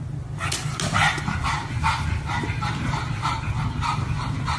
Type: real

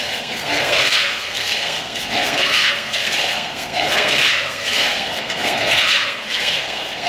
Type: fake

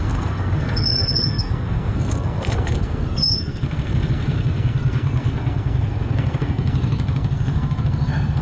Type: fake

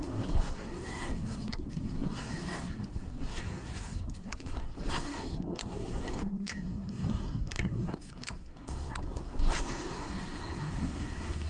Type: fake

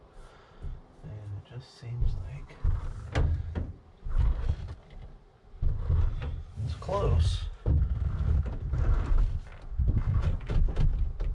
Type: real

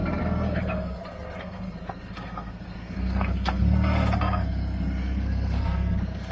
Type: fake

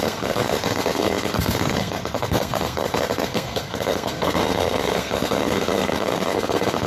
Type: fake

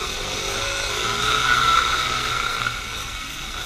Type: fake